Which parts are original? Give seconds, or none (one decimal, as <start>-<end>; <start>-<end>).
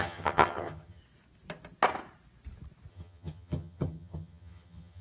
1.0-2.9